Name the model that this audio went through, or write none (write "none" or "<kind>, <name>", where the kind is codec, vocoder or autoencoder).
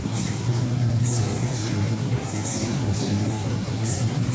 codec, SNAC